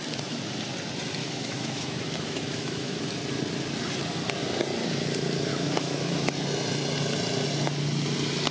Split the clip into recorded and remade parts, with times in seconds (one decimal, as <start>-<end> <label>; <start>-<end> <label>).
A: 0.0-1.2 recorded; 1.2-3.0 remade; 3.0-5.5 recorded; 5.5-6.3 remade; 6.3-8.5 recorded